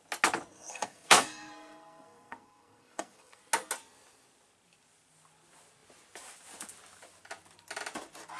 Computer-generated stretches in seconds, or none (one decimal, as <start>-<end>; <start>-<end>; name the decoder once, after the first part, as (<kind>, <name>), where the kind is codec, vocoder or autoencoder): 0.5-3.4 (codec, SNAC)